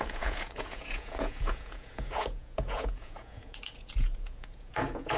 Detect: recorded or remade remade